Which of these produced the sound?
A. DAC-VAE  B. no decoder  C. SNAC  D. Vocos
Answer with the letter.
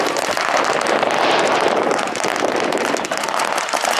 B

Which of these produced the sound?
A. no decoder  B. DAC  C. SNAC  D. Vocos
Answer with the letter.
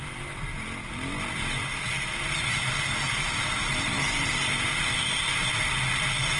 A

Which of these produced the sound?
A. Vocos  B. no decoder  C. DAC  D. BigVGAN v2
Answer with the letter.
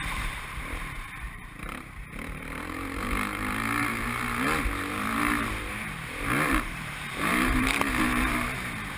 D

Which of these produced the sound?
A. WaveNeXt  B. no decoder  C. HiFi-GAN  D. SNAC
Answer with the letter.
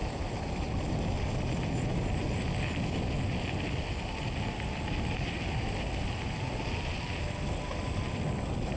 B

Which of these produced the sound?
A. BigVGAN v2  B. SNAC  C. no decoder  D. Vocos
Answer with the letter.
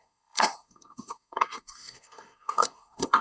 B